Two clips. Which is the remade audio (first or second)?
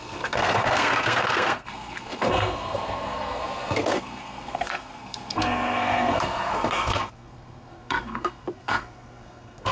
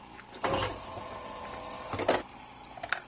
first